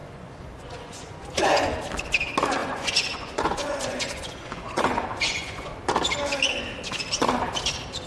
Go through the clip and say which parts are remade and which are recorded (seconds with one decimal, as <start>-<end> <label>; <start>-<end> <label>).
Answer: 0.0-1.7 remade; 1.7-2.6 recorded; 2.6-5.7 remade; 5.7-8.1 recorded